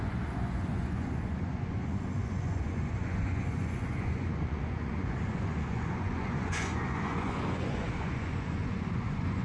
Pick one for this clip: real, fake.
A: fake